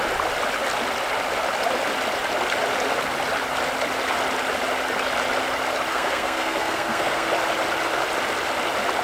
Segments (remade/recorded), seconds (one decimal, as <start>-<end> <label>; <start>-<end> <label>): 0.0-5.9 recorded; 5.9-7.3 remade; 7.3-9.0 recorded